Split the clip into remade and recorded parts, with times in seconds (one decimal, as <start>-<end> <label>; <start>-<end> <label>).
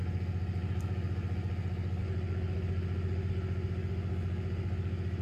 0.0-5.2 recorded